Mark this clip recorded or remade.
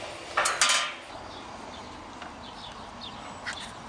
recorded